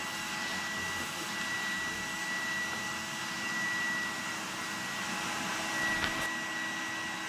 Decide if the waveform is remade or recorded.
recorded